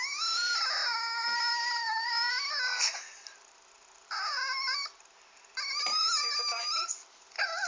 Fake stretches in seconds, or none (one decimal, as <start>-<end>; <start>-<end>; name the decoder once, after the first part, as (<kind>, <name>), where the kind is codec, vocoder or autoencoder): none